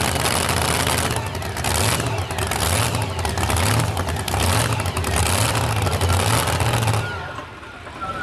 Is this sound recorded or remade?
recorded